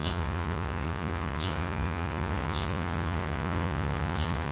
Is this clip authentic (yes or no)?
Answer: no